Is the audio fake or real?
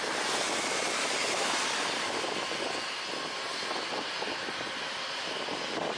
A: real